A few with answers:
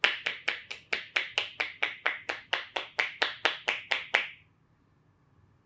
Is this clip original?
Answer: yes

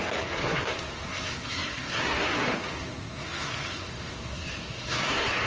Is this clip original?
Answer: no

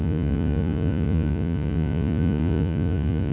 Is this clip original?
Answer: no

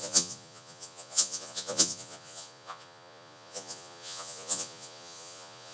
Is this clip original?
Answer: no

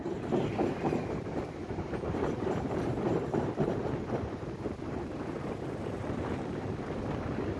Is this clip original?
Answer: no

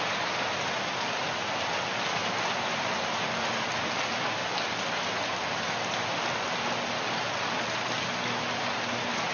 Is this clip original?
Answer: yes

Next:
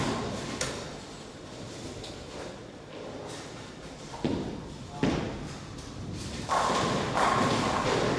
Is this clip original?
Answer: yes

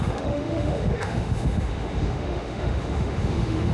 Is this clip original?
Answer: no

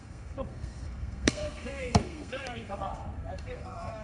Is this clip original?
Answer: no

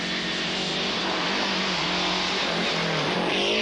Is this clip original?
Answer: yes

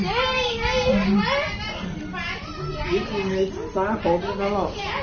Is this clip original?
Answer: yes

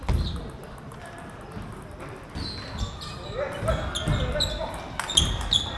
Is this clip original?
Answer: yes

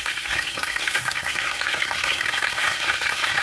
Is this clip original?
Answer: no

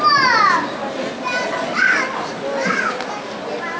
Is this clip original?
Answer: yes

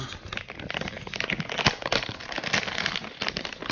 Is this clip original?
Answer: yes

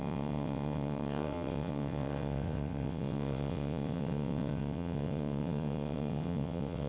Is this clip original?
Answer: no